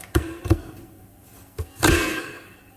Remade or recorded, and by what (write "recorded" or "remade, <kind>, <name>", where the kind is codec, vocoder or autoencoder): remade, codec, SNAC